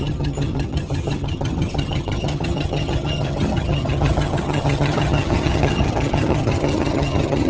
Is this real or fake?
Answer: fake